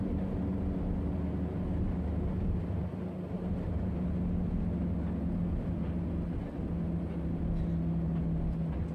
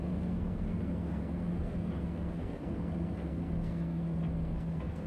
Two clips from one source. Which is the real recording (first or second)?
first